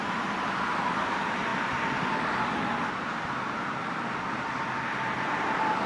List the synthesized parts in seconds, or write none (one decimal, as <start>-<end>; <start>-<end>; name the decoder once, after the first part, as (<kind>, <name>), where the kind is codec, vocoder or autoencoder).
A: 0.8-1.5 (vocoder, BigVGAN v2); 3.0-3.8; 4.8-5.9